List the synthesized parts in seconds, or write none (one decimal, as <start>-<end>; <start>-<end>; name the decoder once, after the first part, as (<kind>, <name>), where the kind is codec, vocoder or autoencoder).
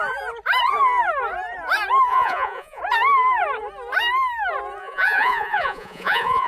2.1-2.8 (vocoder, Vocos); 4.8-6.5